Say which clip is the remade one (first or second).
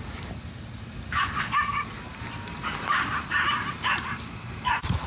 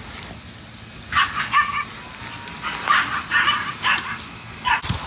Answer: first